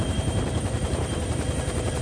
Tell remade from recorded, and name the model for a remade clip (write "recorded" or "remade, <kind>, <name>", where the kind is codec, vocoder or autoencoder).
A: remade, vocoder, BigVGAN v2